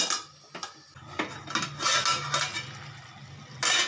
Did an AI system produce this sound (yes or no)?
no